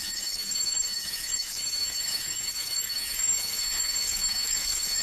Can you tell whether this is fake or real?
fake